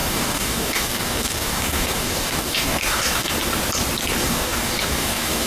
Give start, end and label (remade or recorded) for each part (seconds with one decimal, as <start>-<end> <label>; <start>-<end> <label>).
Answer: 0.0-3.3 remade; 3.3-4.2 recorded; 4.2-5.5 remade